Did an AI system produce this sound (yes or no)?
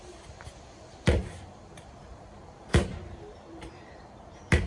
yes